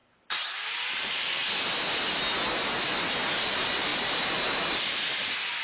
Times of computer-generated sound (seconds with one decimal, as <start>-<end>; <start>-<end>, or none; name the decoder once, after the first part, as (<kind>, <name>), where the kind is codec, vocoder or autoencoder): 0.7-1.4 (vocoder, BigVGAN v2); 3.4-5.6